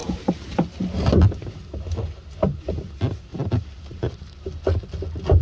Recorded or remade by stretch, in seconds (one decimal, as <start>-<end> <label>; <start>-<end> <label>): 0.0-0.7 remade; 0.7-3.3 recorded; 3.3-4.6 remade; 4.6-5.4 recorded